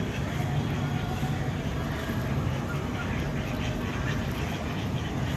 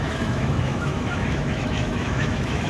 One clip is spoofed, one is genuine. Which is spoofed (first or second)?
second